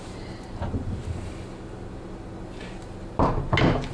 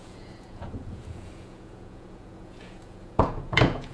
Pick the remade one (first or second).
second